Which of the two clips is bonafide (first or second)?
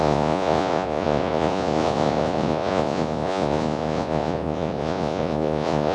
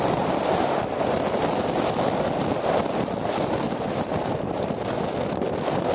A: second